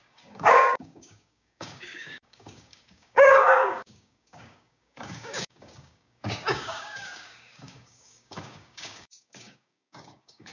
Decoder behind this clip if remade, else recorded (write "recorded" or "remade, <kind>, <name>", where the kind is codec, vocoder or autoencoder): remade, codec, DAC